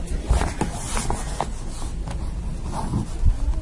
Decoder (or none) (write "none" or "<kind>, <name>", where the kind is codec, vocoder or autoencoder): none